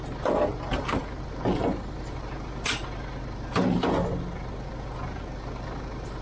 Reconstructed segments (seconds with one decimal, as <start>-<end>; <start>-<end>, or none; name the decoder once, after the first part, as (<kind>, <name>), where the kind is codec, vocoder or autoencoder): none